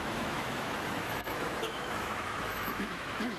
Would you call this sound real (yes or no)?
no